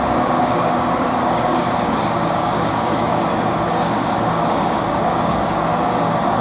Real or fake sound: fake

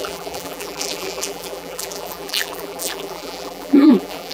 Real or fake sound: fake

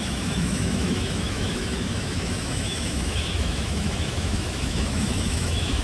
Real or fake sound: fake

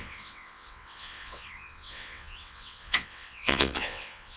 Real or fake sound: fake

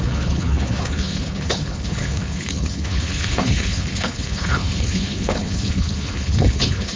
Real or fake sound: fake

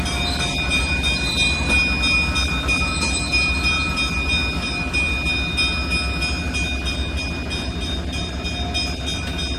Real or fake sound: real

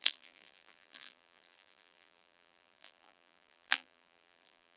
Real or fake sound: fake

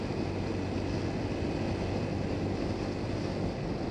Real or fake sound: real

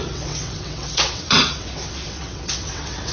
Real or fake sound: fake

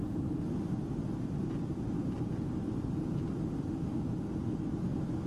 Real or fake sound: real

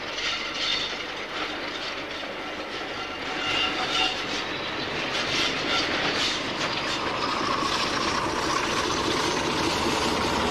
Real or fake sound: real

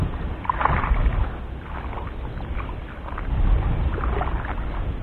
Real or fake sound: real